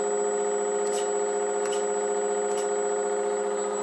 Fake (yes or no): no